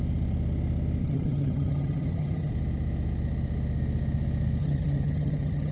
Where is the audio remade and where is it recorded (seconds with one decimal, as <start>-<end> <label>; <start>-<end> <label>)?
0.0-1.0 recorded; 1.0-2.5 remade; 2.5-4.6 recorded; 4.6-5.7 remade